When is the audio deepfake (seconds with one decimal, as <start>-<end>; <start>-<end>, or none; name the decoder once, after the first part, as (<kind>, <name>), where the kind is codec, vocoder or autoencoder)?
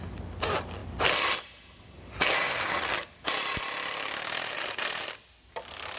none